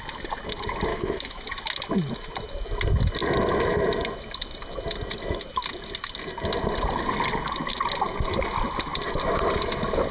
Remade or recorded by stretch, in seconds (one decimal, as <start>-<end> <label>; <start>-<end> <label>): 0.0-0.9 recorded; 0.9-1.4 remade; 1.4-10.1 recorded